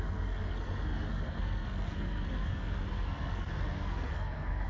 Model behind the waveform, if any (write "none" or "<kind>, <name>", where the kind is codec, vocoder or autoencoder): codec, SNAC